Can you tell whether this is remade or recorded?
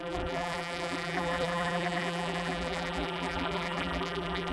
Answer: remade